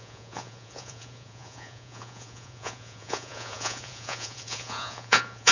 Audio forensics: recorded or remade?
remade